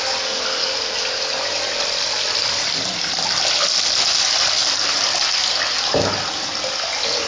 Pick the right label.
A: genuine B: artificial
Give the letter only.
A